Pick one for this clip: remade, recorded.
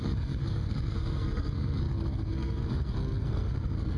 remade